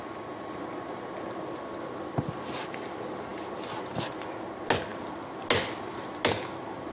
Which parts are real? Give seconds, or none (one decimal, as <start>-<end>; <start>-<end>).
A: 0.0-6.9